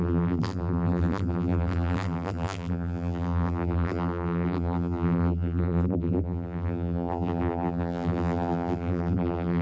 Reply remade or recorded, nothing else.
remade